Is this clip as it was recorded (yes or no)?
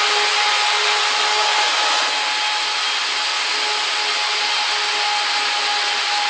yes